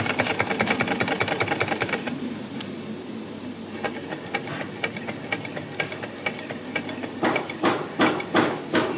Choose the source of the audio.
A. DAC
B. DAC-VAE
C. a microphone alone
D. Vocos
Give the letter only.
C